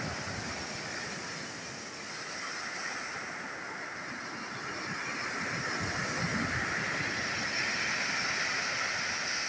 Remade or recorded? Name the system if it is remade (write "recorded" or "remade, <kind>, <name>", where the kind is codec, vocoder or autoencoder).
recorded